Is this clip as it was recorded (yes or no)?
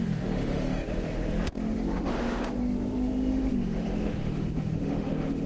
no